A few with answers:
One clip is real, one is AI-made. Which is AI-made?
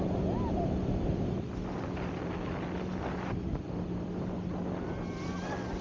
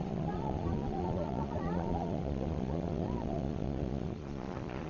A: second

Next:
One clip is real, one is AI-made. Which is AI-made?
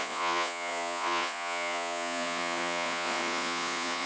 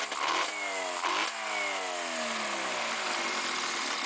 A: first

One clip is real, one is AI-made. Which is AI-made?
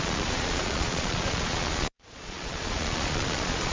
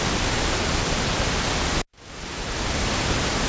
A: first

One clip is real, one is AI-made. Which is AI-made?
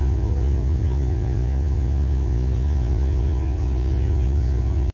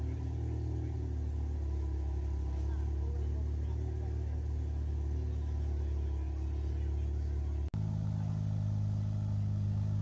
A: first